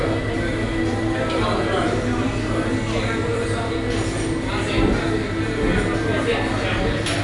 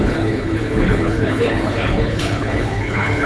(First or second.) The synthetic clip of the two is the second